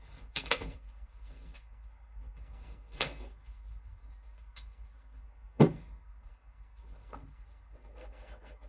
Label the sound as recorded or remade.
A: remade